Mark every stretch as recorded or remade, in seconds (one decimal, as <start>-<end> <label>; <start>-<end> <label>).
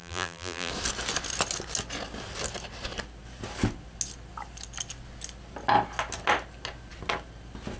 0.0-0.7 remade; 0.7-7.8 recorded